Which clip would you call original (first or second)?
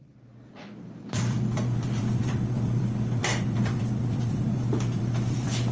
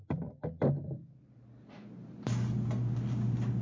second